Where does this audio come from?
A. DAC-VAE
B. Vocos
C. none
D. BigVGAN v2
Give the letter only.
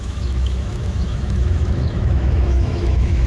A